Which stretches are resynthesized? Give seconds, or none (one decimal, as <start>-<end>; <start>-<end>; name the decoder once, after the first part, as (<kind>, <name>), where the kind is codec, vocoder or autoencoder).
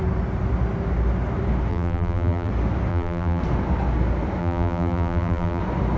1.7-2.5 (vocoder, BigVGAN v2); 2.9-3.4; 4.4-5.6